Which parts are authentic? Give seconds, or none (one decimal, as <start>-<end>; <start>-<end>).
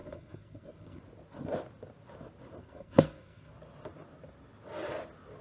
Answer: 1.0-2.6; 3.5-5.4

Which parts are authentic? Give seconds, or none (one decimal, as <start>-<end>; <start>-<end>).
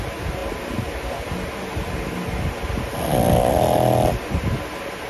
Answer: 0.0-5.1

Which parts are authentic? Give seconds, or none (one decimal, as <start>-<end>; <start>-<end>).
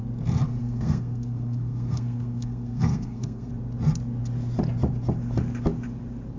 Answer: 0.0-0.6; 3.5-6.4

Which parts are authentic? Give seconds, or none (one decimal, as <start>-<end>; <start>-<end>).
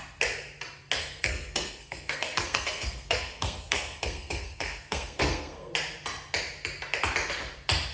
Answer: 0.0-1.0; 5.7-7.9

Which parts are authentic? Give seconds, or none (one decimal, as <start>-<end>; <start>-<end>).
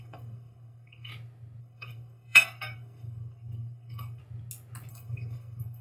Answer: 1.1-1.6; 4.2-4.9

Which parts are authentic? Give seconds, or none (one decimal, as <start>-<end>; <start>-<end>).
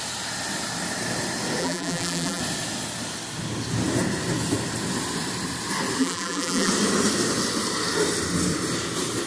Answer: 0.0-1.6; 2.4-6.0; 6.7-9.3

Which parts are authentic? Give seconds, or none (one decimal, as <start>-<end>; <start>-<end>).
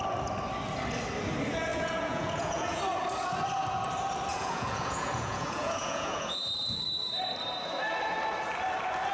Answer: 0.0-1.7; 2.8-4.3; 6.4-9.1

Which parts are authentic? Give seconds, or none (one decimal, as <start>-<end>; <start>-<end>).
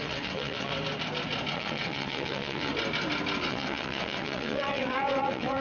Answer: 0.7-1.5; 2.7-3.4